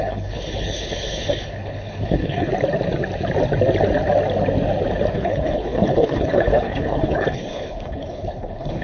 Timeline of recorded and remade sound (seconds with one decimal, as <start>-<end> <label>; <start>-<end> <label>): 0.0-2.5 remade; 2.5-5.1 recorded; 5.1-8.8 remade